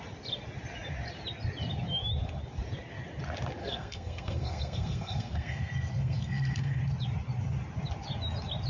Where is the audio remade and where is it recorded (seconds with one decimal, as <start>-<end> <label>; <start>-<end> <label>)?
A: 0.0-3.6 recorded; 3.6-6.8 remade; 6.8-8.7 recorded